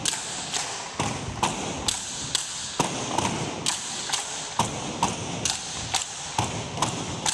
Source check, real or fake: real